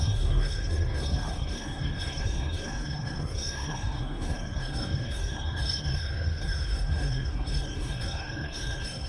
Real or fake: fake